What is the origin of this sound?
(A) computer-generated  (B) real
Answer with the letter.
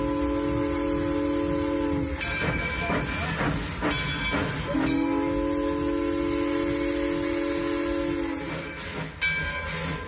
B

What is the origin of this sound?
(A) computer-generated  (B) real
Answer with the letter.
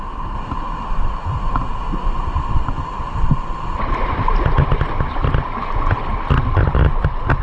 B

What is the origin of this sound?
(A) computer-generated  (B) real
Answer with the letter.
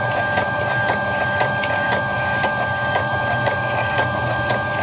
A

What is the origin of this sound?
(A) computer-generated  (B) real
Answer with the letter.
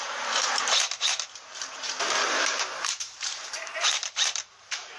A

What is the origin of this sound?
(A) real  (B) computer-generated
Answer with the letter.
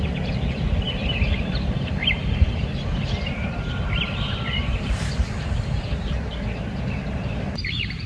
B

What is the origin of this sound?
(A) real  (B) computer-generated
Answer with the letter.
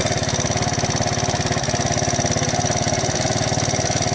A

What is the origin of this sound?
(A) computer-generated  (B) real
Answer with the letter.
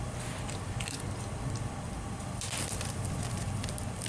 B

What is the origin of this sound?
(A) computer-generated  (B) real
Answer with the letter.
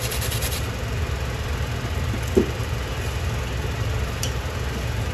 B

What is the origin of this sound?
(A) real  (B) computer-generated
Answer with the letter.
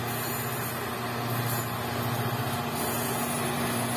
A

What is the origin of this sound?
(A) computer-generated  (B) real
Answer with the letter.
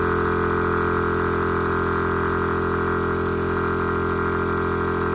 B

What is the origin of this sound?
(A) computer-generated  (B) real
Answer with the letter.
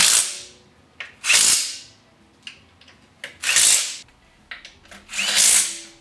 B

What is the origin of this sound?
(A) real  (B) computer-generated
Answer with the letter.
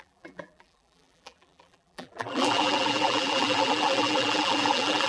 B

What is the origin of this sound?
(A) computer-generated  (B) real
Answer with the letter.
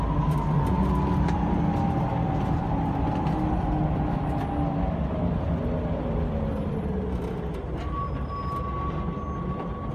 B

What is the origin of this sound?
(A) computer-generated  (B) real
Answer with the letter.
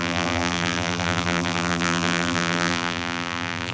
A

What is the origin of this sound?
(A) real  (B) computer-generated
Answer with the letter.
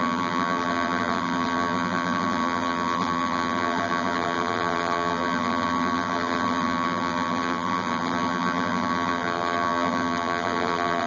B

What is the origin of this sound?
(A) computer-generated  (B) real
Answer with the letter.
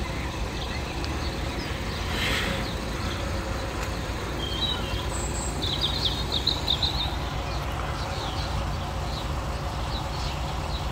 B